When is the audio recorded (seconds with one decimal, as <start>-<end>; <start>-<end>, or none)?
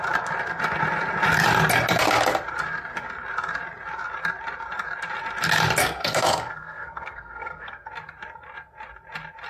0.0-5.8; 7.9-9.5